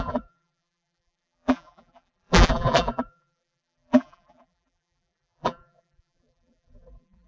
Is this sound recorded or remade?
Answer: remade